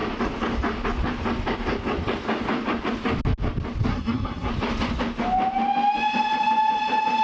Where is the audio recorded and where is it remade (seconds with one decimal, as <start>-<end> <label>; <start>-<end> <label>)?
0.0-3.9 recorded; 3.9-4.5 remade; 4.5-7.2 recorded